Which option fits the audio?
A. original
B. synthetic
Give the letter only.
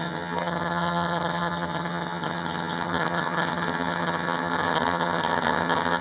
B